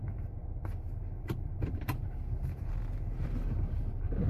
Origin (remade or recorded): remade